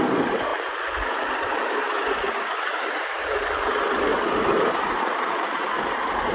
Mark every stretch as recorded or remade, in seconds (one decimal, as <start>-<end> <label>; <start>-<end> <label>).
0.0-4.1 remade; 4.1-4.7 recorded; 4.7-6.3 remade